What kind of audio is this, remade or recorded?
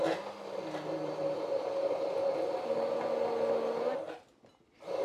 recorded